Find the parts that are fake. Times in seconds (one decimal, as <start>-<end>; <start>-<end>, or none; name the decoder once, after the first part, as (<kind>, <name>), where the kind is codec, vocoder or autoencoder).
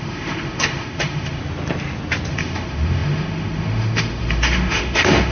0.0-1.4 (autoencoder, DAC-VAE); 2.3-5.3